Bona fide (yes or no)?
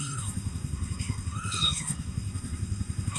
no